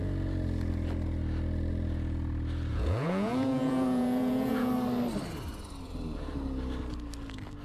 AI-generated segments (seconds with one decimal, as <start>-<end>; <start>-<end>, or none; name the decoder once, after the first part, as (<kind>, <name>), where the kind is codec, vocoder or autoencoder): 2.7-4.7 (vocoder, Vocos)

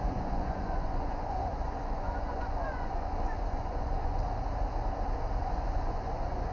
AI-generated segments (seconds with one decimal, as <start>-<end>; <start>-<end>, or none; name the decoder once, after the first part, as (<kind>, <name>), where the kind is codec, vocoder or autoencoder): 0.0-4.2 (vocoder, Vocos); 5.4-6.5

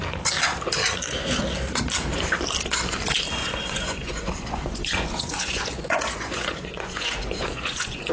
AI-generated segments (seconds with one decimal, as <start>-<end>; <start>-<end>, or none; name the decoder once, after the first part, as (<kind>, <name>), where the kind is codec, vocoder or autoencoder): 3.4-8.1 (vocoder, Vocos)